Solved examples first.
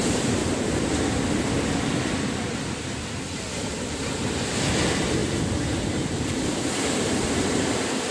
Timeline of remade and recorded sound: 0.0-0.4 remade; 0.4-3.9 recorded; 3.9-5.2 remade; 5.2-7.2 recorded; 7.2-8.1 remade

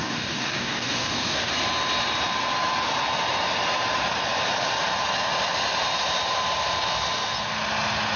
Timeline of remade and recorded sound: 0.0-1.5 remade; 1.5-8.2 recorded

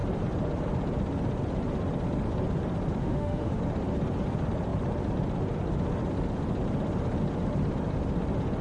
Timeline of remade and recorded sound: 0.0-3.0 recorded; 3.0-3.6 remade; 3.6-8.6 recorded